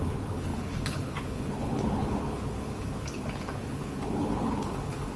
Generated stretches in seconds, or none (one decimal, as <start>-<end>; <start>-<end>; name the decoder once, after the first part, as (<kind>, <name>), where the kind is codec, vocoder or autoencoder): 0.0-5.2 (codec, HILCodec)